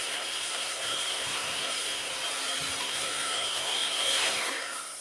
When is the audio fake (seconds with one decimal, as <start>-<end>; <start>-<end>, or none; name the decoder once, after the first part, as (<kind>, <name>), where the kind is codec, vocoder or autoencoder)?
0.0-2.1 (codec, SNAC); 2.8-5.0